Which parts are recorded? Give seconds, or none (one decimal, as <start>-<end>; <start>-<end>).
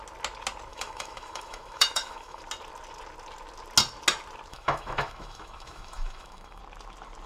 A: 0.0-0.7; 2.4-4.5; 6.6-7.3